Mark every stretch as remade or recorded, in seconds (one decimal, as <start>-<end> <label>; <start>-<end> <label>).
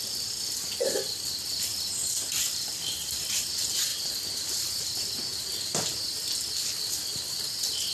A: 0.0-7.9 recorded